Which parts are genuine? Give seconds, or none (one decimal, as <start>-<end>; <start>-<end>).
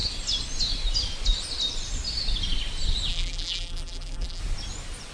0.0-3.1; 4.4-5.1